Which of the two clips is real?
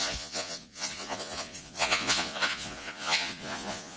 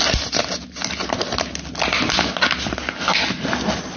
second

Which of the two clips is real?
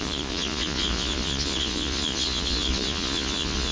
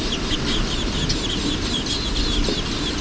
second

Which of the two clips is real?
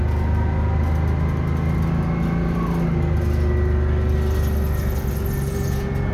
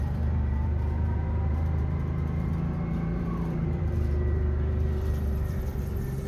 first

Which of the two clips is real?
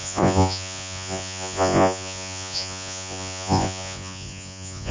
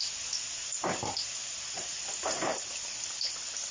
second